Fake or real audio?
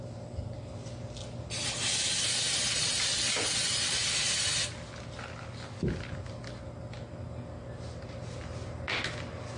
real